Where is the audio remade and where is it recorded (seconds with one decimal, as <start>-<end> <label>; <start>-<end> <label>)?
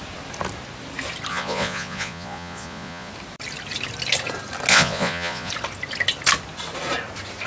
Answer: 0.0-1.3 recorded; 1.3-3.1 remade; 3.1-4.7 recorded; 4.7-5.5 remade; 5.5-7.5 recorded